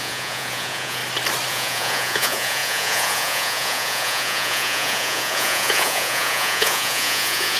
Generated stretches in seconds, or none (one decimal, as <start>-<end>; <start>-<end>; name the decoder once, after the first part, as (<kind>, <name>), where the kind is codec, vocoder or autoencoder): 0.0-1.0 (vocoder, Vocos); 1.5-7.6

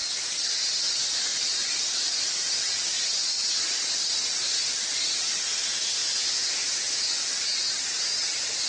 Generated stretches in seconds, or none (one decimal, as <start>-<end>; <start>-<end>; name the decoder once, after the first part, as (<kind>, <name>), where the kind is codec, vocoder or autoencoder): 6.0-7.3 (vocoder, Vocos)

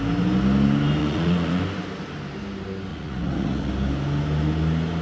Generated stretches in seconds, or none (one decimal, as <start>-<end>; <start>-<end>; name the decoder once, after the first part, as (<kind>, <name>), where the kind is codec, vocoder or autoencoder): 1.0-1.6 (vocoder, Vocos); 2.9-3.7

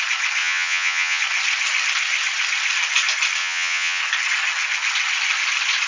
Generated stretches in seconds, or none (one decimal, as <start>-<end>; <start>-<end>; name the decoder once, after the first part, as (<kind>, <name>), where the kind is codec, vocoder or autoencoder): 0.4-1.2 (vocoder, Vocos); 3.4-4.0